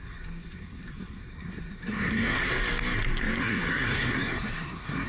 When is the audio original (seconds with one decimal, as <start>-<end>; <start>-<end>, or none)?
2.5-3.4